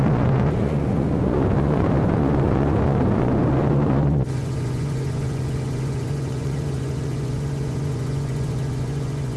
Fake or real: fake